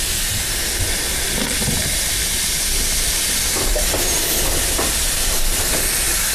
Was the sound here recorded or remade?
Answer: recorded